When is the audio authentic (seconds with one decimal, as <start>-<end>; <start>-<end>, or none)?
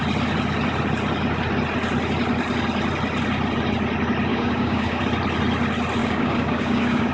0.0-4.3; 5.0-6.0